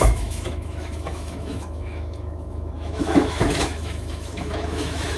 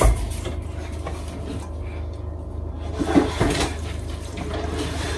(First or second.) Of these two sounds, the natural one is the second